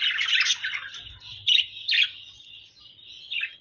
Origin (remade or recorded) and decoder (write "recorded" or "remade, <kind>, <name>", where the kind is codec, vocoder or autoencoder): remade, vocoder, BigVGAN v2